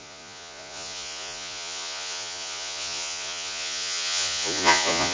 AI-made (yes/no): yes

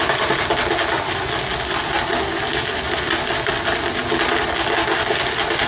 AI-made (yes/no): no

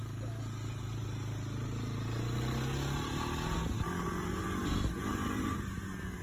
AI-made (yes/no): no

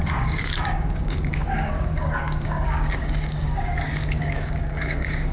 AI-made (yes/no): yes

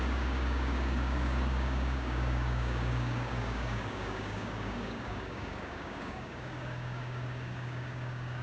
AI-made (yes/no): yes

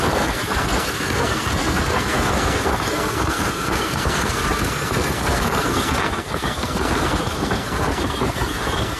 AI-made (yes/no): yes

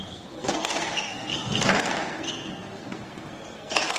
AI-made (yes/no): yes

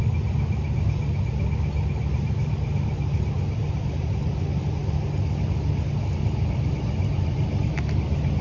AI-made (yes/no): no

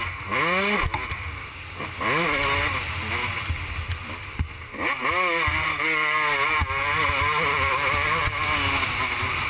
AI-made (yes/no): no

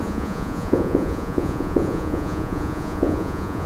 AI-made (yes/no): yes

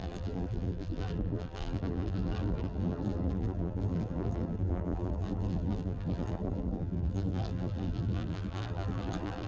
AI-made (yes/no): yes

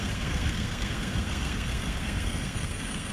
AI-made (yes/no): yes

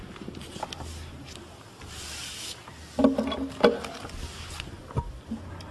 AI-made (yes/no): no